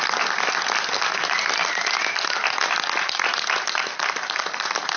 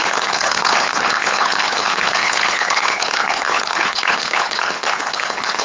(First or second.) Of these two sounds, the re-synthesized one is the second